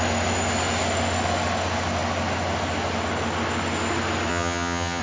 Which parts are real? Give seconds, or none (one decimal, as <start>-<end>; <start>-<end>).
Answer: 0.0-4.3